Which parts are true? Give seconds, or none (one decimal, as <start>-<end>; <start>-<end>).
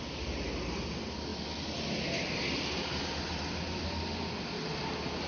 0.0-5.3